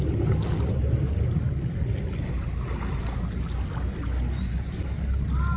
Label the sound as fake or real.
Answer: real